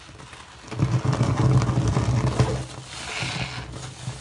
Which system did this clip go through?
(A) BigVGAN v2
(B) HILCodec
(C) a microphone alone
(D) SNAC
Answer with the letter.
C